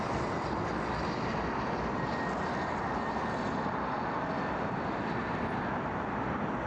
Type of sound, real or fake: real